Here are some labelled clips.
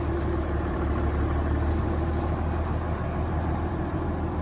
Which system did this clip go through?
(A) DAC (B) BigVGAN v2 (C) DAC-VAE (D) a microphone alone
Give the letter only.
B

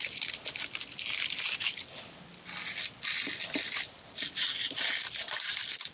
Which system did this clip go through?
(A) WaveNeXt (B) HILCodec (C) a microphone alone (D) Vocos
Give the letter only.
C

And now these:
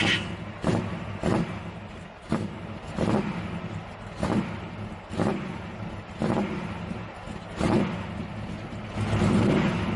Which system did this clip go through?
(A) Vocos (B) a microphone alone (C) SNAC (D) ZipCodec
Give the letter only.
B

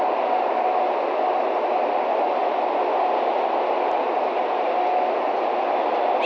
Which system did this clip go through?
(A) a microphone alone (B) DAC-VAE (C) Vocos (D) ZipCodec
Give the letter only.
A